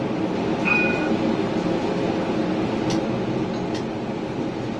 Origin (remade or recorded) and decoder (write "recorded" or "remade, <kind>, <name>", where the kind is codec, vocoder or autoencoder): recorded